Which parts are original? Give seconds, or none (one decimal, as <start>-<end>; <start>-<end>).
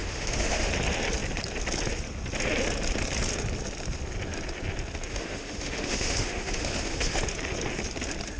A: 0.7-5.1; 7.2-8.4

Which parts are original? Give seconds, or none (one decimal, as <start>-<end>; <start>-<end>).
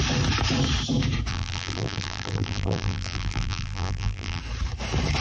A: 0.0-1.3; 4.4-5.2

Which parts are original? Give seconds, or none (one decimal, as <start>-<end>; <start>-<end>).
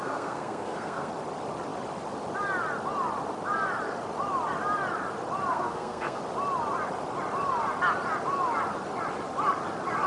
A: 1.1-5.5; 6.2-10.1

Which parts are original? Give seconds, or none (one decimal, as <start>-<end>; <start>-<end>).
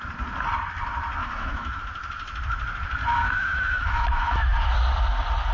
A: 0.0-1.2; 1.8-3.0; 4.5-5.5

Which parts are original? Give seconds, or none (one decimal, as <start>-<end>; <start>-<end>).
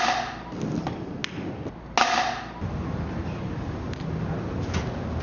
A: 0.0-5.2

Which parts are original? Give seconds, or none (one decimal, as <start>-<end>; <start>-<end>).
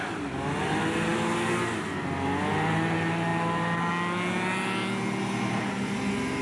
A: 0.0-6.4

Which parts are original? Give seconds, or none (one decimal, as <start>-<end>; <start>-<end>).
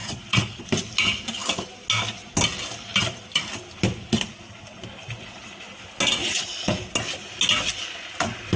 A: 0.7-6.2; 6.7-8.6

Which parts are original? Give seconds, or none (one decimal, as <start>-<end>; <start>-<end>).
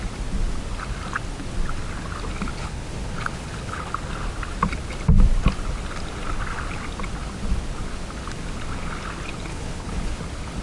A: 0.0-2.5; 3.9-9.5; 10.2-10.6